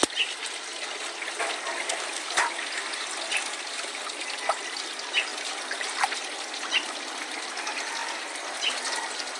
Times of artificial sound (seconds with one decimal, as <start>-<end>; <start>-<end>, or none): none